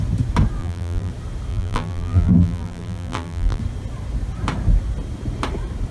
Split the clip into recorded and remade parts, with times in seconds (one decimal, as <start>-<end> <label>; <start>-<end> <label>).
0.0-0.6 recorded; 0.6-1.1 remade; 1.1-1.5 recorded; 1.5-3.6 remade; 3.6-5.9 recorded